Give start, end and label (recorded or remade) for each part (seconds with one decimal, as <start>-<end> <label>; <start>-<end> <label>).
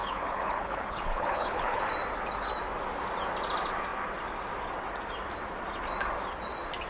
0.0-1.8 remade; 1.8-6.9 recorded